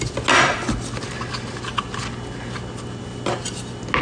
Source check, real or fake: real